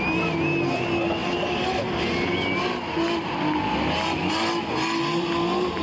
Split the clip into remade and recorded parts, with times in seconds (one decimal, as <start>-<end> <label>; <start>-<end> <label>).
0.0-5.8 recorded